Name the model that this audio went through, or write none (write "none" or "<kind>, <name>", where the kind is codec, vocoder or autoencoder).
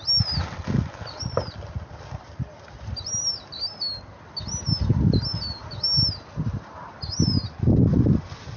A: none